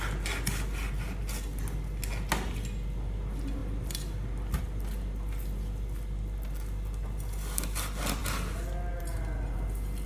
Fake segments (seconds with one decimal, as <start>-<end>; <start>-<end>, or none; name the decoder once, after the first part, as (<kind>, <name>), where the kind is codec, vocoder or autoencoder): none